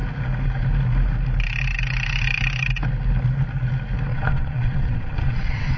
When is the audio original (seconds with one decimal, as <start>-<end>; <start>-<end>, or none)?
0.0-4.1